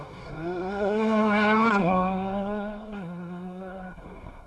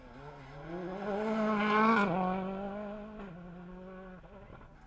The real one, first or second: second